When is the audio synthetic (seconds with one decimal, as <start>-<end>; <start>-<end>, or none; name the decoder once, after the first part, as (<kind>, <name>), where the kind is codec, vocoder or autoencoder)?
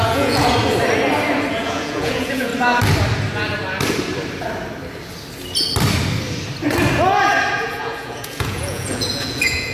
0.0-0.4 (vocoder, Vocos); 1.5-2.5; 7.5-9.7